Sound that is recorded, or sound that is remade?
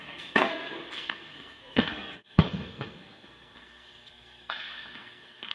remade